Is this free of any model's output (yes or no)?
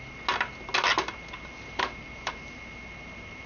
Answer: yes